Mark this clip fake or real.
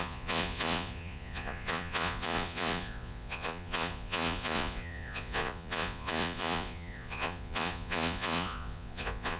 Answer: fake